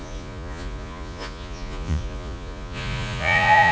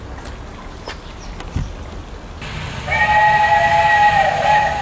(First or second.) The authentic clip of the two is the second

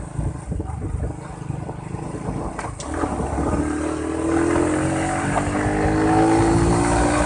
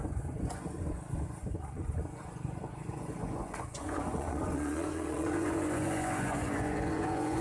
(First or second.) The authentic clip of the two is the first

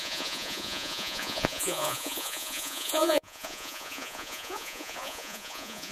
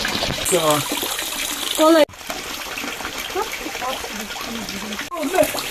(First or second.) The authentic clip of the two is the second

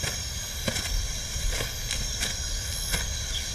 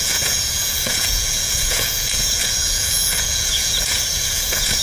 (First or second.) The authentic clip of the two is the first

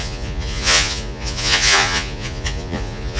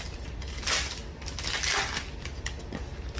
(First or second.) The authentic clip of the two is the second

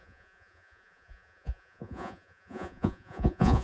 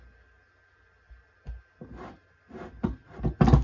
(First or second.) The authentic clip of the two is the second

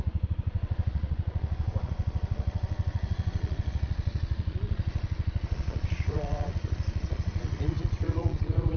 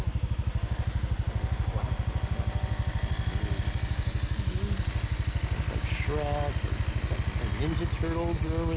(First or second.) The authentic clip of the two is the second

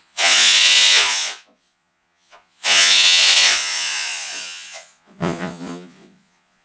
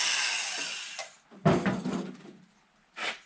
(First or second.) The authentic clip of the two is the second